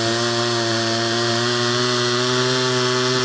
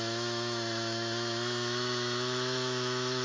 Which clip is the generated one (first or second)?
second